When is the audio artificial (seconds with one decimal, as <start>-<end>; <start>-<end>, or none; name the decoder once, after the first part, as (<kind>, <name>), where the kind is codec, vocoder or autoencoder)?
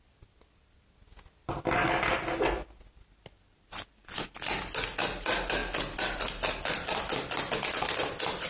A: 5.6-7.4 (vocoder, BigVGAN v2)